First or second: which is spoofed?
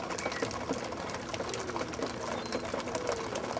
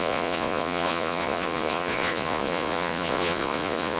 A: second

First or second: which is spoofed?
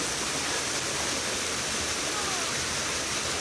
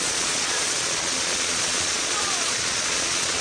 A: second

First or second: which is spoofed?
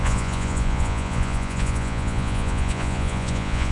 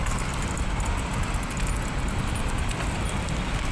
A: first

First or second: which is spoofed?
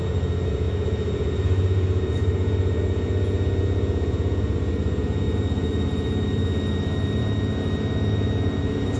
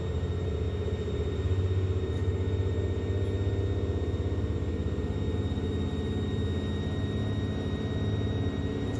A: first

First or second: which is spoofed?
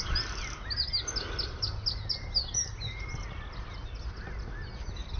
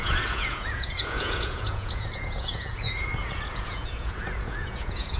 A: second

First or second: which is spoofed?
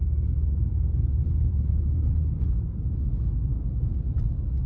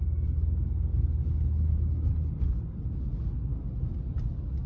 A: first